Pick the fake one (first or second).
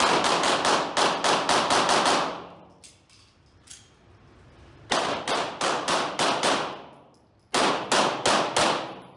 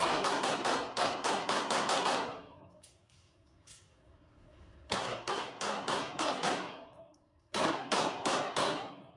second